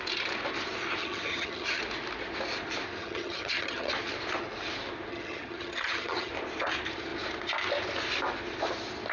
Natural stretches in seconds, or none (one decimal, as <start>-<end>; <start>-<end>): 0.0-1.0; 1.8-3.0; 3.9-5.1; 6.3-9.1